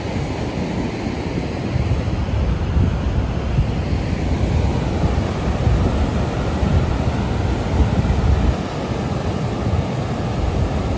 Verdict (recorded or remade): recorded